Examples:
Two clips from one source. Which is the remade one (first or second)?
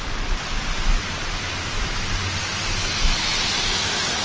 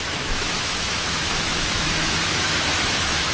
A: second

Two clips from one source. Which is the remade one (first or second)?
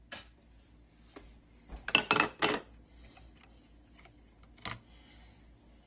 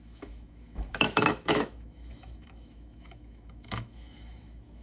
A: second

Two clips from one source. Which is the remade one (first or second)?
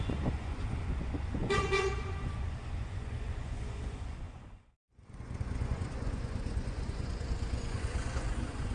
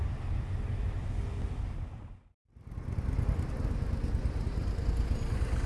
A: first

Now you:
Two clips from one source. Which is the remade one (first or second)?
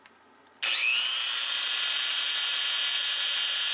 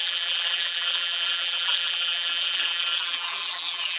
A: second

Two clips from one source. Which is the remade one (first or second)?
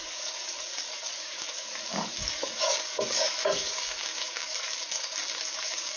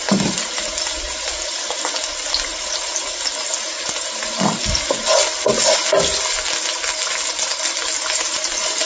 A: first